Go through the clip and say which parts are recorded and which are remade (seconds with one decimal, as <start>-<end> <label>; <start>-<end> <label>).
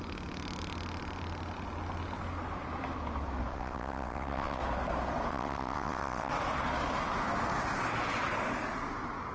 0.0-3.5 recorded; 3.5-4.6 remade; 4.6-5.3 recorded; 5.3-6.3 remade; 6.3-9.3 recorded